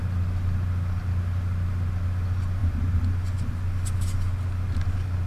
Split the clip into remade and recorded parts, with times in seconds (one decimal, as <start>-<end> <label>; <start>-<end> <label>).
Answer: 0.0-5.3 recorded